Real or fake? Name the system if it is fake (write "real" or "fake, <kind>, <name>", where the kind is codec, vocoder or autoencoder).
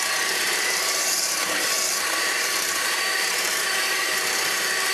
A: fake, vocoder, BigVGAN v2